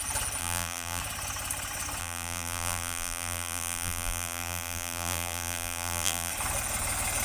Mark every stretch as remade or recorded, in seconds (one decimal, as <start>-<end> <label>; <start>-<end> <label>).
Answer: 0.0-0.4 recorded; 0.4-1.0 remade; 1.0-2.0 recorded; 2.0-6.3 remade; 6.3-7.2 recorded